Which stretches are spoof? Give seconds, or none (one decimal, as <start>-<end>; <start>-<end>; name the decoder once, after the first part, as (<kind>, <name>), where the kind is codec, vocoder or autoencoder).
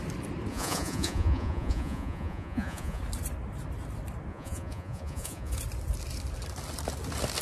0.5-3.0 (vocoder, Vocos); 4.3-5.5